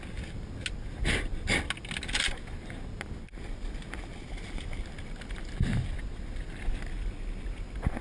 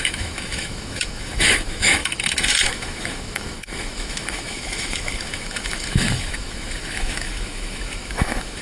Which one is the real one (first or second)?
first